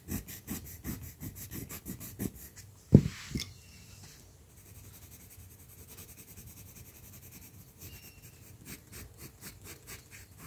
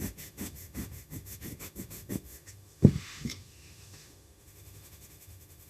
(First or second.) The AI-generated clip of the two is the second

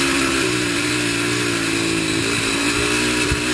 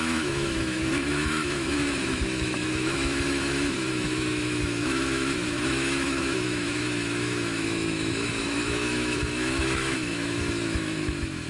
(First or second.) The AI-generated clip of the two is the second